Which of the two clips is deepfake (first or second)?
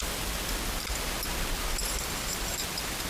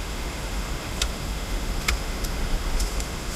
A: second